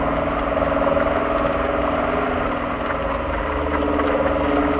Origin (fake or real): real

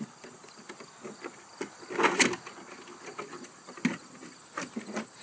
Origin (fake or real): real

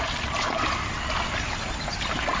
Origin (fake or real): real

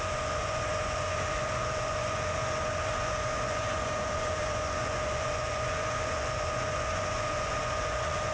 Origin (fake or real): fake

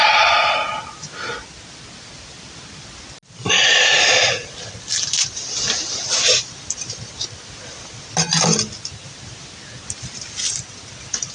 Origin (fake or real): real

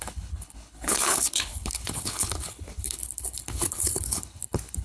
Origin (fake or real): fake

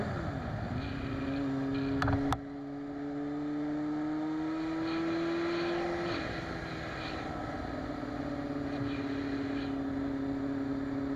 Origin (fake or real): real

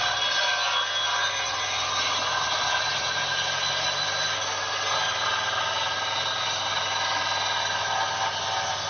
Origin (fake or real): real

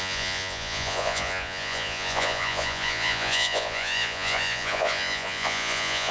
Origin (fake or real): fake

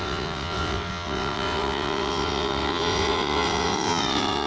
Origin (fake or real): fake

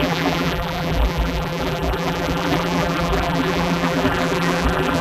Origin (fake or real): fake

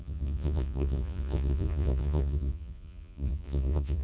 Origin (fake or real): fake